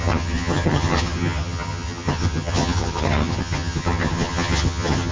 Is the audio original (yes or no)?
no